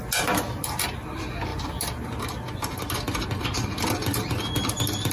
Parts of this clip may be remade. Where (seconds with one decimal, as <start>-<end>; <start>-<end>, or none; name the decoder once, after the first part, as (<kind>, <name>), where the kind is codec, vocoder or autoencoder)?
none